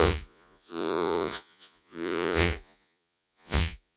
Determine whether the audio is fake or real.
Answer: fake